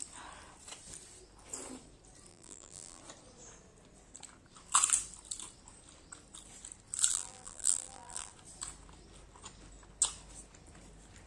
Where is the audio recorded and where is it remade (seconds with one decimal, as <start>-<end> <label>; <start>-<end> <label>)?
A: 0.0-2.3 recorded; 2.3-3.0 remade; 3.0-7.1 recorded; 7.1-8.3 remade; 8.3-11.3 recorded